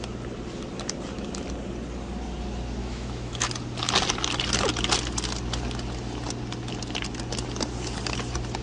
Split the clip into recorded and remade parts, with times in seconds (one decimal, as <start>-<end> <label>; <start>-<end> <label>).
0.0-2.8 recorded; 2.8-3.5 remade; 3.5-8.6 recorded